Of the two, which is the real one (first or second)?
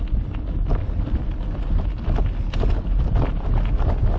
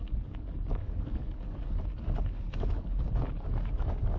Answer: first